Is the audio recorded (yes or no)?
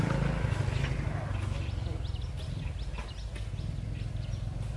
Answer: yes